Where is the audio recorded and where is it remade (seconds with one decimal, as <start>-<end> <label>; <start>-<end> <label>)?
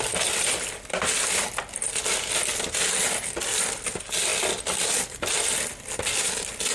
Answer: 0.0-4.3 recorded; 4.3-5.3 remade; 5.3-6.7 recorded